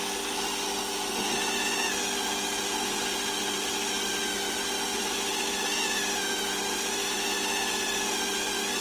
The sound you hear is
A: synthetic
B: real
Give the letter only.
B